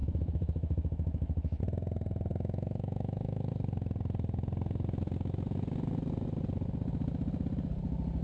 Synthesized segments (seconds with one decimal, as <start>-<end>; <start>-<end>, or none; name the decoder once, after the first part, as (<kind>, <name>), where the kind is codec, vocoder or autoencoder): 0.0-1.6 (autoencoder, DAC-VAE); 2.3-3.5